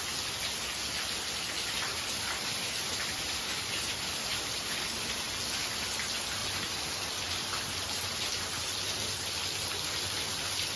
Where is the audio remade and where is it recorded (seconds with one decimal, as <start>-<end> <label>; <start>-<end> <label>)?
0.0-1.9 recorded; 1.9-5.2 remade; 5.2-10.8 recorded